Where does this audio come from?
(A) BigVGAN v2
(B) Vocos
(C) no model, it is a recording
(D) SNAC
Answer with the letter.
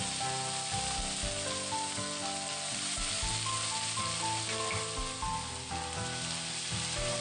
C